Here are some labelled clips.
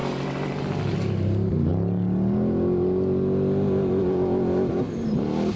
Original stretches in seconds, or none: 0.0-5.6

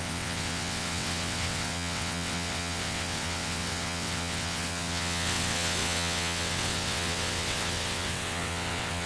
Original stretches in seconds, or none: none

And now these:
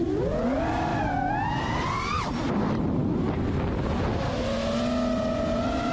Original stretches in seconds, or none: 0.0-5.9

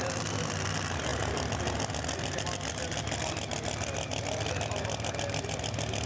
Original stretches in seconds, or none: 0.0-6.1

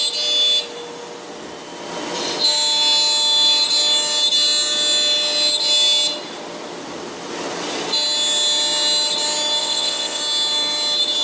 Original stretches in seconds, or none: 0.0-9.6; 10.2-11.2

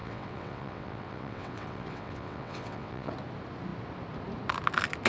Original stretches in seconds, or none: 3.1-5.1

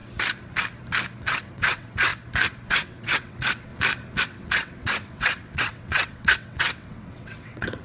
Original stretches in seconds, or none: 0.0-1.2; 2.1-2.7; 3.7-4.2

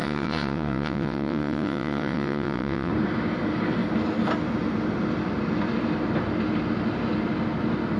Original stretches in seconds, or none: 2.9-8.0